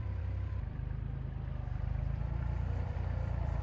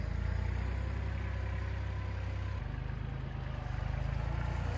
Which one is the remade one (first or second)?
first